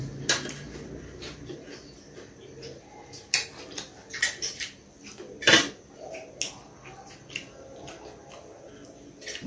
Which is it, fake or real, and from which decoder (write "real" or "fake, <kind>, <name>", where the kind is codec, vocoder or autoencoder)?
real